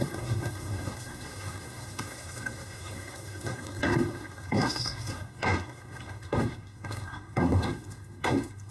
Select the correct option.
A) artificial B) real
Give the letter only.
A